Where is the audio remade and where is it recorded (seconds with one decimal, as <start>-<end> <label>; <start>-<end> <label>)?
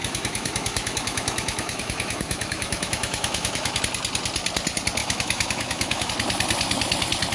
0.0-3.8 remade; 3.8-5.0 recorded; 5.0-6.1 remade; 6.1-7.3 recorded